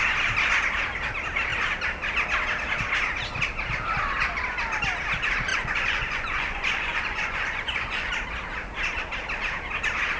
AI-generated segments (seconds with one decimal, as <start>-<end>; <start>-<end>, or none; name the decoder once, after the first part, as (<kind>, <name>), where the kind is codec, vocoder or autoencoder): 5.5-8.1 (vocoder, Vocos)